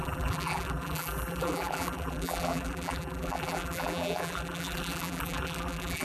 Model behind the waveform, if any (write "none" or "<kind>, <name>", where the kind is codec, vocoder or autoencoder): vocoder, BigVGAN v2